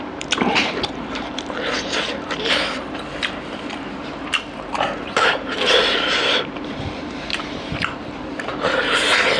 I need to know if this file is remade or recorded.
remade